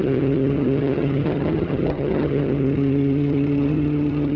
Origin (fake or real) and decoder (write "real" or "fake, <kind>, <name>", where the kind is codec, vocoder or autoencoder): fake, vocoder, HiFi-GAN